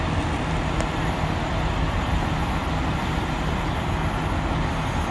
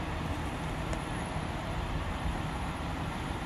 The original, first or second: first